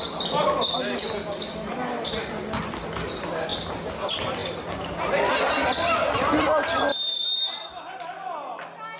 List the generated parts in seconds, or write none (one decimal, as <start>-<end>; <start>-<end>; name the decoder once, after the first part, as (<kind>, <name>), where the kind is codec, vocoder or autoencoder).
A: none